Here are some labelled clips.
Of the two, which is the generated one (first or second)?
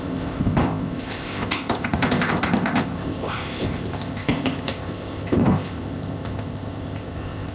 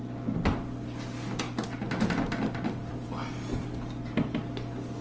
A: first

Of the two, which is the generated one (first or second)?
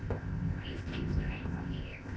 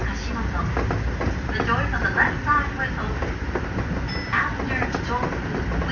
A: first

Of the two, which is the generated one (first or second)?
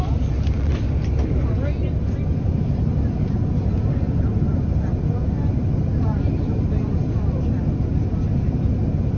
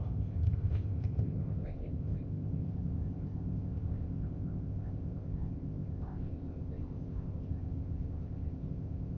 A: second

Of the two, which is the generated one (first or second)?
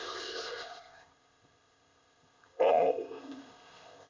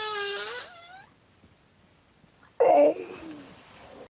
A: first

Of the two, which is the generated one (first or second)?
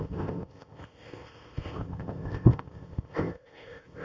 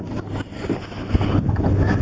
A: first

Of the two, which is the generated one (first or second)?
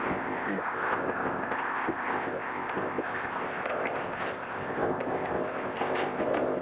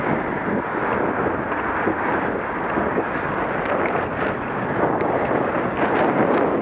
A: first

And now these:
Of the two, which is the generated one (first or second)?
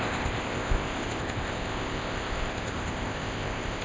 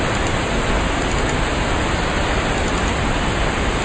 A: first